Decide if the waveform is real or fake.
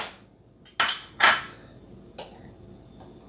real